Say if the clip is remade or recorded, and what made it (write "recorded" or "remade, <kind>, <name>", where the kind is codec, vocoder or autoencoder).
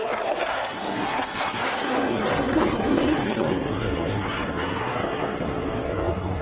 remade, codec, SNAC